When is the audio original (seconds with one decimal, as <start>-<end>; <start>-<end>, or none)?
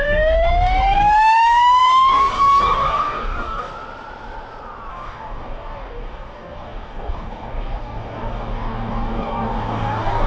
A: 3.7-4.9